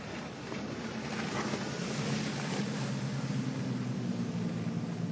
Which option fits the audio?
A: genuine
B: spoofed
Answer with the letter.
A